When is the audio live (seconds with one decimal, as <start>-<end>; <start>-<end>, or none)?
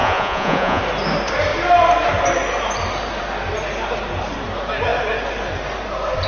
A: 0.8-6.3